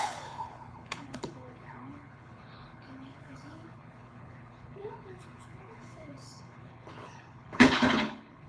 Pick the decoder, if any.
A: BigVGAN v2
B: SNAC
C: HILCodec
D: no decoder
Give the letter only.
C